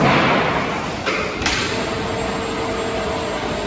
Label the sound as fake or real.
real